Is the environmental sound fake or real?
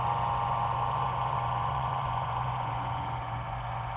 fake